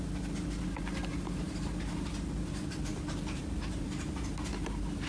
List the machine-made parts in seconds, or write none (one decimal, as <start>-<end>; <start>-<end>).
1.1-2.1; 2.9-4.1